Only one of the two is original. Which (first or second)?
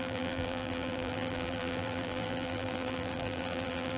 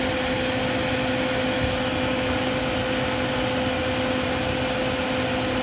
second